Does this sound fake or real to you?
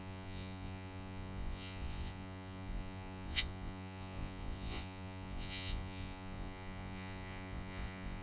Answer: fake